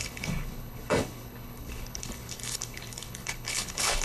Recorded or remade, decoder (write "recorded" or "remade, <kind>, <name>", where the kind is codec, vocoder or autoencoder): remade, codec, HILCodec